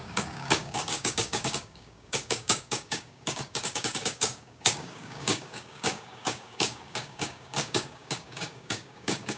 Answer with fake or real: fake